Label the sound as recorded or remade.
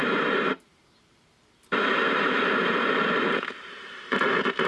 remade